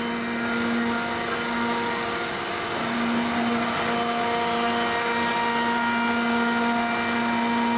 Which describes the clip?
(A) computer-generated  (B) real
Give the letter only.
B